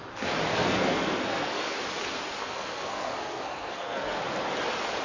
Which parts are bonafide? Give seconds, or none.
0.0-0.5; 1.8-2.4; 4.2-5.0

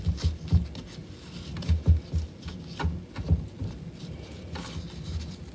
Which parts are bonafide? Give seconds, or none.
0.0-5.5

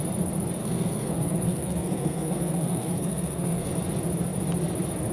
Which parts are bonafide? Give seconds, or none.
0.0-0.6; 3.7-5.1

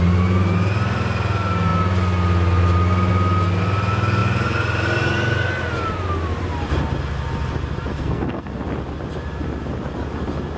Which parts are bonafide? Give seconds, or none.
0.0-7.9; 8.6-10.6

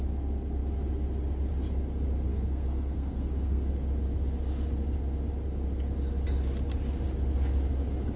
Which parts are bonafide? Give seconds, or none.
0.0-2.3; 3.7-8.2

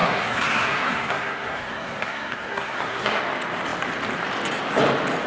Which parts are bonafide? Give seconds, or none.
3.2-5.3